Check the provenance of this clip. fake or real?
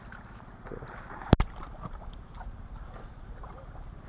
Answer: real